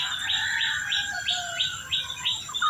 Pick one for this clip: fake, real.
real